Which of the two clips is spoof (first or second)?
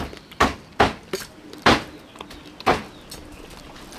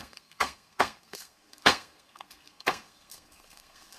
second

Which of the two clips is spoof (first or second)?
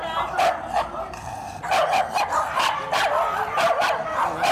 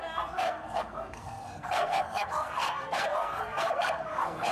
second